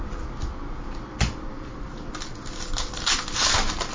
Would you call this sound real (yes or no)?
yes